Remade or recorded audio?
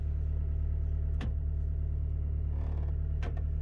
recorded